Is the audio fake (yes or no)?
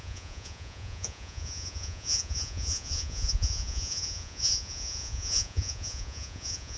yes